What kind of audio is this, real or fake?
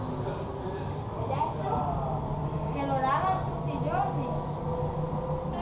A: real